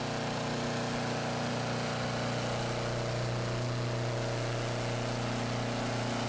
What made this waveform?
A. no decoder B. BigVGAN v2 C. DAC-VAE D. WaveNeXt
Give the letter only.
A